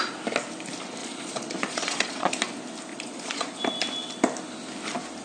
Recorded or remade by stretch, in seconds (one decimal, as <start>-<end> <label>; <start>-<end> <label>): 0.0-1.0 recorded; 1.0-2.3 remade; 2.3-2.9 recorded; 2.9-3.6 remade; 3.6-5.2 recorded